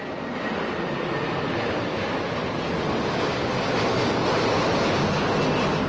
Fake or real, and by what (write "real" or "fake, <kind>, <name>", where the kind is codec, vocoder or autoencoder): real